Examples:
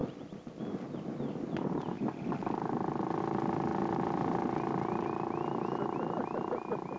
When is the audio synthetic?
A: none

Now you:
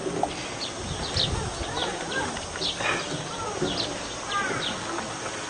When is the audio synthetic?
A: none

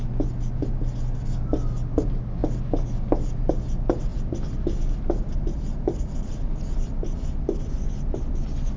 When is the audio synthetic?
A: 4.1-7.4 (vocoder, BigVGAN v2)

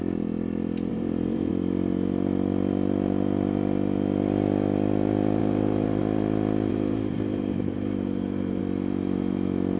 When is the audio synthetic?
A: 0.9-1.5 (vocoder, BigVGAN v2); 5.4-6.0; 6.7-8.6

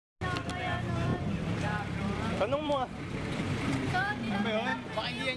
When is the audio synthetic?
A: 1.1-4.3 (vocoder, BigVGAN v2)

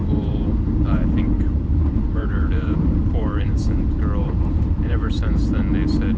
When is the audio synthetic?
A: 0.0-3.7 (vocoder, BigVGAN v2); 4.2-5.6

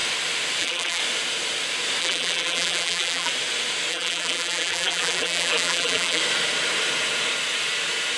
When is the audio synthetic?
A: 0.6-1.0 (vocoder, BigVGAN v2); 2.0-3.3; 3.9-6.2

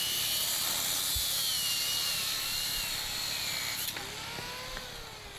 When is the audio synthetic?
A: none